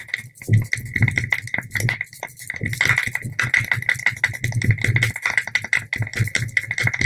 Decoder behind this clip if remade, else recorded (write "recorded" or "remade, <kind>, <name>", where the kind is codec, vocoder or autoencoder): recorded